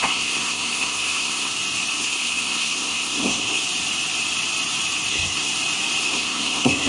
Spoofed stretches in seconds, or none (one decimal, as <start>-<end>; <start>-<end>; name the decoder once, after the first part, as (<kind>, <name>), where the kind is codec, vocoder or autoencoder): 0.0-1.5 (codec, SNAC); 2.0-3.6; 5.1-5.5; 6.0-6.9